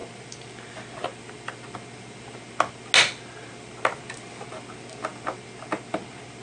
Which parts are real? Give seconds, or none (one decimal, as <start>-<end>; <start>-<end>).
0.0-6.4